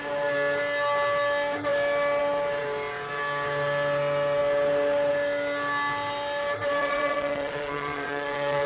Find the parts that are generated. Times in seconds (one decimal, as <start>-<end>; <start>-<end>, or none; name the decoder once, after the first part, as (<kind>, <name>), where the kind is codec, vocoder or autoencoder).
6.8-8.7 (vocoder, Vocos)